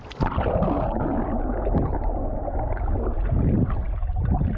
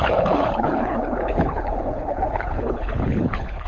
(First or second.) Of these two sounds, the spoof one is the second